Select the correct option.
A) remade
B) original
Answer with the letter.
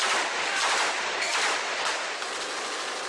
B